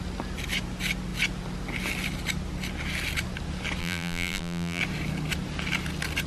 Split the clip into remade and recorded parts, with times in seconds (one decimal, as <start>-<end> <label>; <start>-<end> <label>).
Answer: 0.0-3.8 recorded; 3.8-4.8 remade; 4.8-6.3 recorded